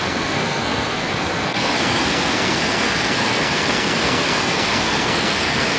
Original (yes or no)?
no